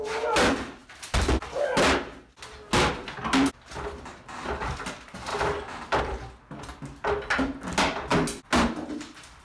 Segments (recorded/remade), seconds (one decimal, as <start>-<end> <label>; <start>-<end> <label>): 0.0-9.4 recorded